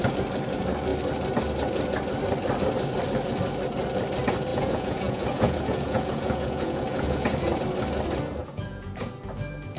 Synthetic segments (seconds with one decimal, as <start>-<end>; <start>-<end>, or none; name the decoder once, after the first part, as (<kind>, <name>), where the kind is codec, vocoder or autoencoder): 4.5-7.6 (vocoder, Vocos); 8.4-9.1